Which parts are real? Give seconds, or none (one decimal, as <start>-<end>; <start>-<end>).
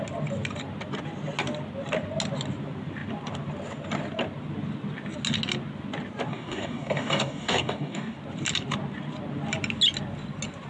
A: 0.0-6.3; 8.2-10.7